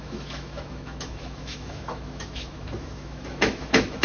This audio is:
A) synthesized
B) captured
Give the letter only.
A